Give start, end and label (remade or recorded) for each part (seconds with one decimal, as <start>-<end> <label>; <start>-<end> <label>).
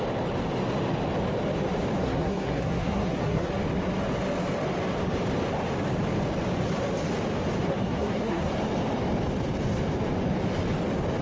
0.0-2.0 recorded; 2.0-3.5 remade; 3.5-7.7 recorded; 7.7-8.5 remade; 8.5-11.2 recorded